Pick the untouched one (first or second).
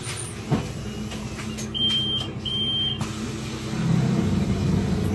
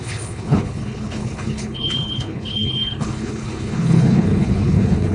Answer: first